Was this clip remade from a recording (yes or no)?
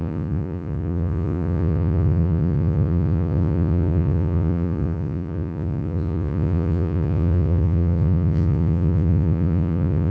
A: yes